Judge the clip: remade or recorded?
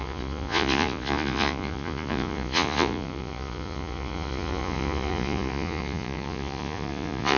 remade